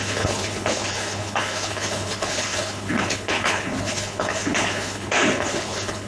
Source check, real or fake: fake